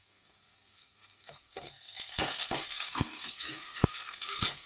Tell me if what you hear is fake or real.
fake